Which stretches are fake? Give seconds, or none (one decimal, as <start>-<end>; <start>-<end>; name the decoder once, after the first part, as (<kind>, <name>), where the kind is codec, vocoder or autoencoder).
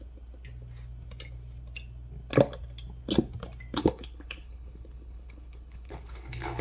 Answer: 3.8-6.6 (codec, HILCodec)